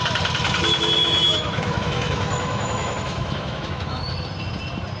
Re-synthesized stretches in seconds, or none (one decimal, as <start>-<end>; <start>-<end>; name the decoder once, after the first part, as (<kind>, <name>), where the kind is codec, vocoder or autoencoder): 1.0-4.0 (autoencoder, DAC-VAE)